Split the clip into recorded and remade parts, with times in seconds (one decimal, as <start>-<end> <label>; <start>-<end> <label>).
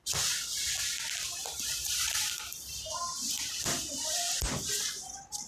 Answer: 0.0-1.4 recorded; 1.4-4.2 remade; 4.2-5.5 recorded